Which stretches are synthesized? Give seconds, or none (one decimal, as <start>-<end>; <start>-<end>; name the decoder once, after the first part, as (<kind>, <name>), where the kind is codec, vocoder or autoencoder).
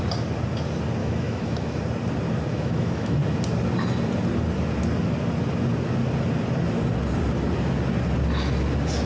1.0-1.8 (autoencoder, DAC-VAE); 2.5-3.2